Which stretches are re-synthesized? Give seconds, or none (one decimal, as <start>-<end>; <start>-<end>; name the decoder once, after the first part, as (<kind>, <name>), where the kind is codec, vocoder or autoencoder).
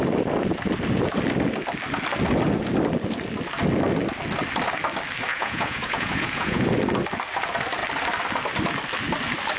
5.3-6.6 (vocoder, Vocos)